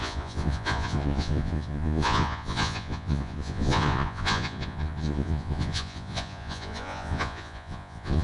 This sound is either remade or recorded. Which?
remade